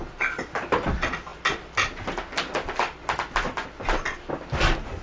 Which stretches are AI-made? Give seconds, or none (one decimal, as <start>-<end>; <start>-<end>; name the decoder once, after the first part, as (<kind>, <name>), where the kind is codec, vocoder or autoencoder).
none